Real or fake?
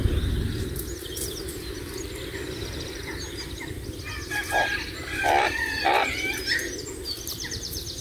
real